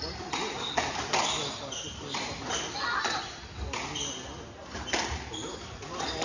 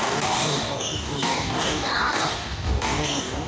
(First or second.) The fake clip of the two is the second